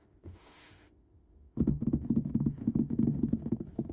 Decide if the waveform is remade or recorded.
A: remade